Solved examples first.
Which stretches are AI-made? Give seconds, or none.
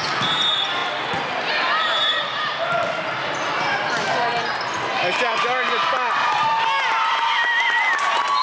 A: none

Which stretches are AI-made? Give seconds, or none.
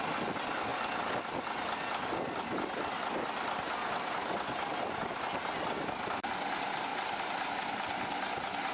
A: none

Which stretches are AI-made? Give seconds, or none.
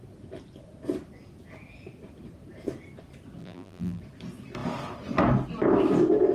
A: 3.4-4.0 (vocoder, BigVGAN v2)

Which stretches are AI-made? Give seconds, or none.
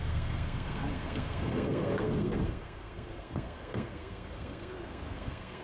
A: 0.0-5.6 (codec, SNAC)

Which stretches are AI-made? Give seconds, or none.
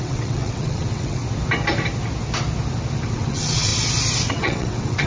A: 0.0-1.2 (vocoder, WaveNeXt); 3.1-3.7; 4.3-5.1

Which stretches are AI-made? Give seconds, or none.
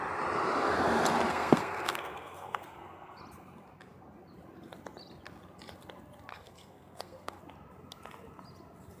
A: 1.3-3.2 (codec, SNAC); 6.3-7.4